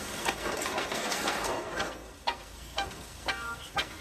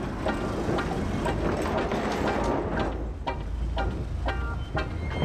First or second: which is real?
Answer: second